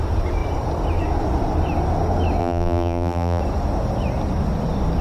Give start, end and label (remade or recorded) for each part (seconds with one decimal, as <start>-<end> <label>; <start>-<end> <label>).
0.0-2.4 recorded; 2.4-3.4 remade; 3.4-5.0 recorded